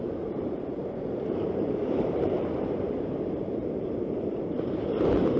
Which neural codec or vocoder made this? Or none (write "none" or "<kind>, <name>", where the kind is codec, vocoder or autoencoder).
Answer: vocoder, BigVGAN v2